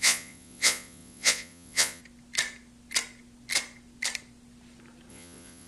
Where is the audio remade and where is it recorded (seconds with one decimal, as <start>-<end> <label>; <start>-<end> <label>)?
0.0-2.0 remade; 2.0-5.1 recorded; 5.1-5.7 remade